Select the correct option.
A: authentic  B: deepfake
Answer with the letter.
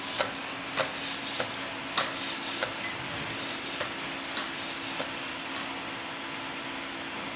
A